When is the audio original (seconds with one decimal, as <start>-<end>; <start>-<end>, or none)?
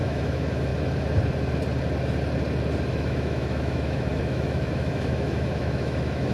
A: 0.7-2.9